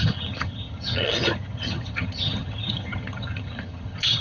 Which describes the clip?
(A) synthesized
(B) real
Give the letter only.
A